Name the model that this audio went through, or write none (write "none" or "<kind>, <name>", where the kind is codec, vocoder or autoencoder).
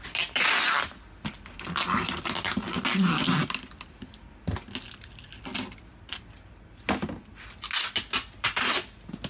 none